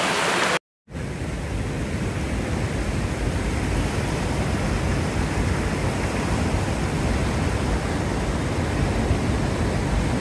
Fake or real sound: real